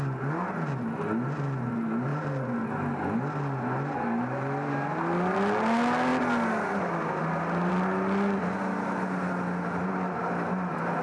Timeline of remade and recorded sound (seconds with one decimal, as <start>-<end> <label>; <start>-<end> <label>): 0.0-11.0 recorded